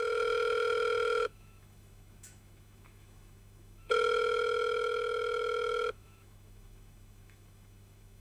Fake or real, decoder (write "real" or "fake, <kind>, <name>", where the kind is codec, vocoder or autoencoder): fake, autoencoder, DAC-VAE